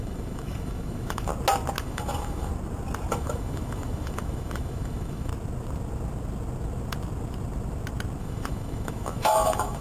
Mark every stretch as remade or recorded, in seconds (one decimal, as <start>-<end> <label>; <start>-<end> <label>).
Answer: 0.0-1.3 remade; 1.3-1.8 recorded; 1.8-2.5 remade; 2.5-3.1 recorded; 3.1-5.3 remade; 5.3-8.2 recorded; 8.2-9.8 remade